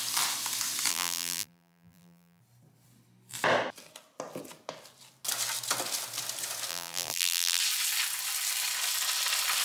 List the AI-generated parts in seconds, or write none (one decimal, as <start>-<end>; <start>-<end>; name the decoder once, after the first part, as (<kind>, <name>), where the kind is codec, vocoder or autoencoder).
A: 0.9-2.4 (vocoder, BigVGAN v2); 6.7-7.6